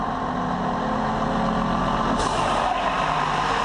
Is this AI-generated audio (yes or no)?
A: no